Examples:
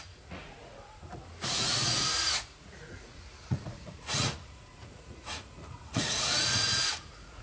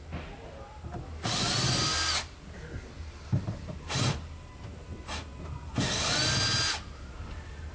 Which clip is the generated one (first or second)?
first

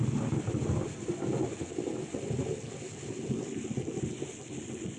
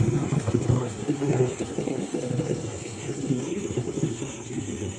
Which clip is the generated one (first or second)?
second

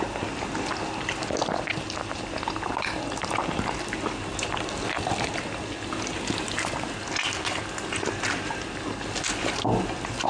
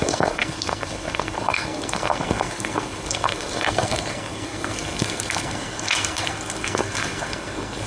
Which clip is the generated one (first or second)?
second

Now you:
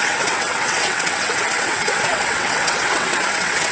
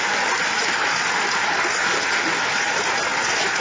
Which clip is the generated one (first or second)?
first